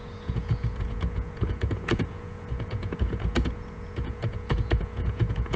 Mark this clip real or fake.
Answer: fake